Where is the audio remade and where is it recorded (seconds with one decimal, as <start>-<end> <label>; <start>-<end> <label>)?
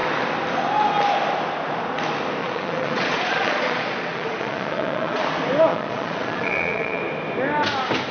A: 0.0-2.4 recorded; 2.4-5.2 remade; 5.2-5.7 recorded; 5.7-7.0 remade; 7.0-8.1 recorded